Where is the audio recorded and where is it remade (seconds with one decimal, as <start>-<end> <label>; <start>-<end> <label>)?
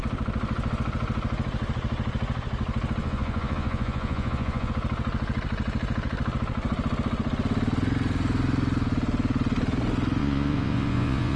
0.0-3.0 recorded; 3.0-4.7 remade; 4.7-10.2 recorded; 10.2-11.4 remade